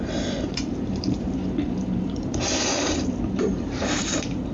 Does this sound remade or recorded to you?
remade